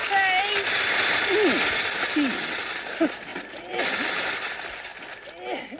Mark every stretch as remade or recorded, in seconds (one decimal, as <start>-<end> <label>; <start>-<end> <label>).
0.0-3.3 recorded; 3.3-4.5 remade; 4.5-5.8 recorded